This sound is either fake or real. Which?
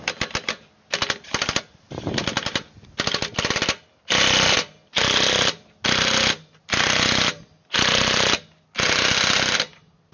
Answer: real